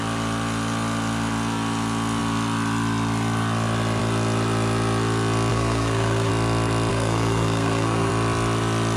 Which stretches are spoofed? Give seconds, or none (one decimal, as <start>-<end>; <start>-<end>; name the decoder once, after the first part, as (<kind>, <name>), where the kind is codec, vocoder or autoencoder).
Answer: 5.5-6.3 (codec, SNAC); 6.9-8.1